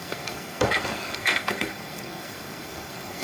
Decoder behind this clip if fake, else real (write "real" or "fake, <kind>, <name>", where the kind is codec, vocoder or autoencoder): fake, codec, SNAC